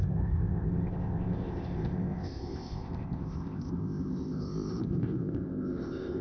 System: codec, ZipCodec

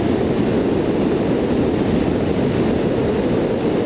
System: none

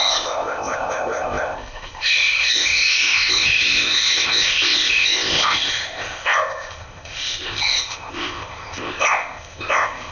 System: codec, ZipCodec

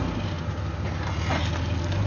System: none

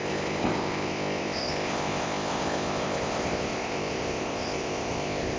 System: codec, ZipCodec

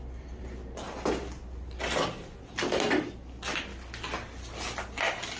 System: none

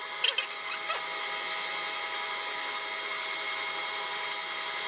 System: none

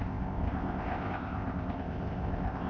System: codec, ZipCodec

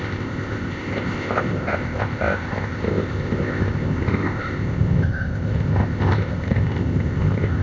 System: codec, ZipCodec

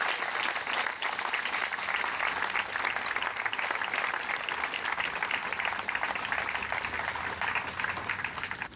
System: none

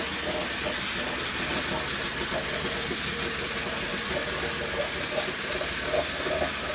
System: none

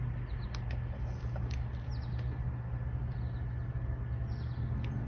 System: none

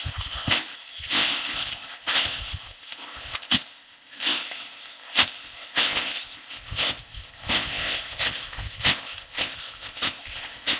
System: codec, ZipCodec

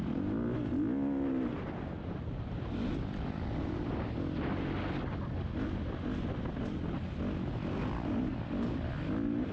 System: none